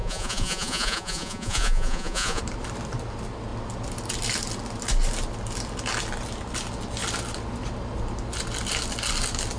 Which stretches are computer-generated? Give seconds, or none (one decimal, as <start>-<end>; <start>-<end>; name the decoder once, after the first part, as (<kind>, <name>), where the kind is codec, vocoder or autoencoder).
0.0-2.4 (vocoder, Vocos)